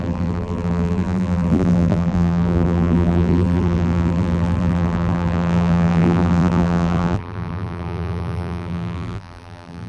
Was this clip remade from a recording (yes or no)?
yes